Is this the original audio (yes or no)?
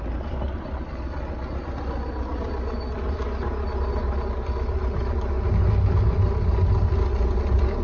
yes